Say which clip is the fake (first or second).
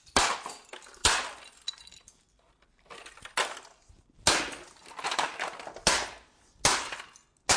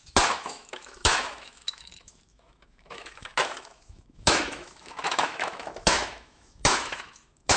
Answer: second